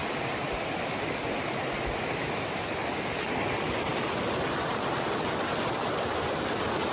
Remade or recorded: recorded